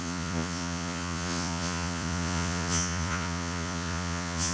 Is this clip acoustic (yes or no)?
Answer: no